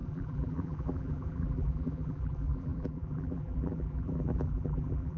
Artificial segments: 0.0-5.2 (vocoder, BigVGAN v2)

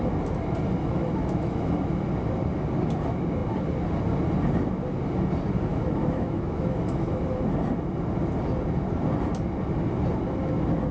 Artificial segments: 0.8-1.9 (autoencoder, DAC-VAE); 5.7-7.2

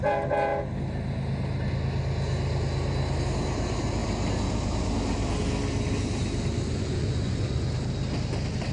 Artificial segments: 6.7-7.7 (vocoder, Vocos)

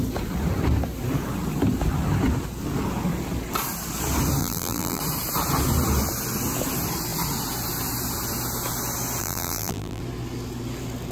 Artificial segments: 4.4-5.0 (vocoder, BigVGAN v2); 9.2-10.0

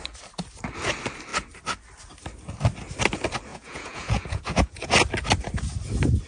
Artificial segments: 3.5-4.9 (vocoder, Vocos)

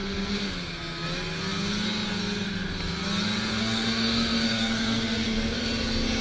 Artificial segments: 0.0-0.5 (codec, SNAC); 3.5-5.7

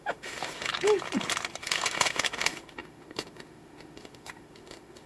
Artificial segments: 0.0-0.7 (autoencoder, DAC-VAE); 1.6-5.1

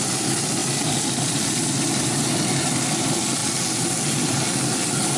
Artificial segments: none